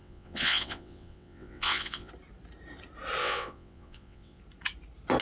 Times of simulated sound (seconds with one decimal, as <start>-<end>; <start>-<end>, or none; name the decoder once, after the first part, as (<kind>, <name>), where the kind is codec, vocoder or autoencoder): 0.0-2.1 (vocoder, WaveNeXt); 3.2-4.4